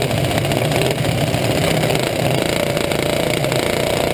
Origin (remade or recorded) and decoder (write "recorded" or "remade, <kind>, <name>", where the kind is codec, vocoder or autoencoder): recorded